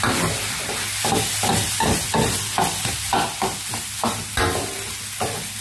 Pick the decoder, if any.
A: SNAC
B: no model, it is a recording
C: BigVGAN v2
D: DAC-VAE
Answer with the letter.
B